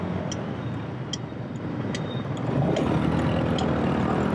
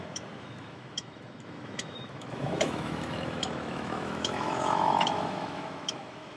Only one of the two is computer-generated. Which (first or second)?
second